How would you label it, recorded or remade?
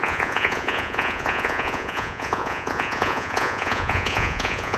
remade